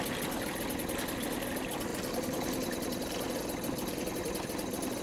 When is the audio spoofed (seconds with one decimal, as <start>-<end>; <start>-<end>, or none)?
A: none